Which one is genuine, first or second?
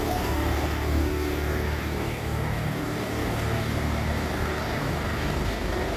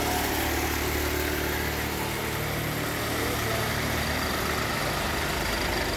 second